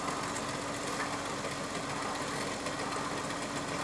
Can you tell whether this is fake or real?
real